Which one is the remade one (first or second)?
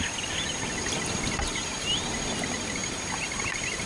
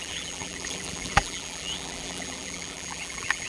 second